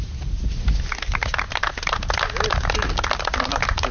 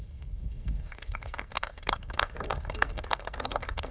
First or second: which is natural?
first